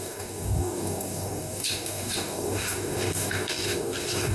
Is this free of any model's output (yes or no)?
no